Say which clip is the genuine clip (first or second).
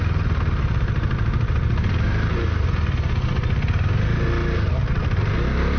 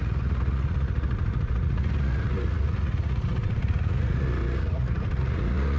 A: first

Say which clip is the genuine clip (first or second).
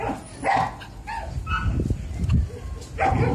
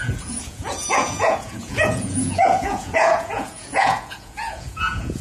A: first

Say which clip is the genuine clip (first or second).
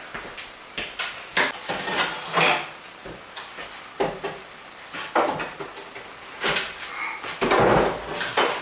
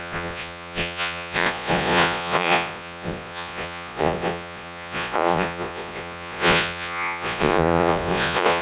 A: first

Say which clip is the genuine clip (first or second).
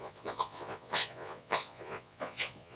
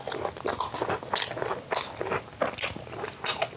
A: second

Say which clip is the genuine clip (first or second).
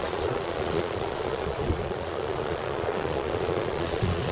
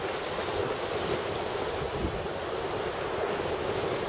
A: second